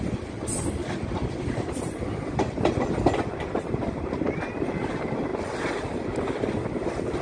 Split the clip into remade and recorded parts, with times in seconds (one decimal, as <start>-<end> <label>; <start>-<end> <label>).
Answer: 0.0-7.2 recorded